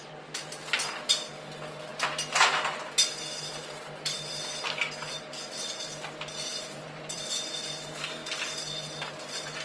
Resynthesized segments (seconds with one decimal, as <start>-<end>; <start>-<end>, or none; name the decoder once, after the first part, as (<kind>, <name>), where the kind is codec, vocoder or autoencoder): 6.5-7.2 (vocoder, BigVGAN v2)